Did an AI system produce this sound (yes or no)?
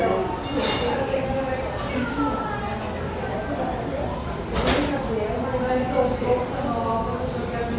no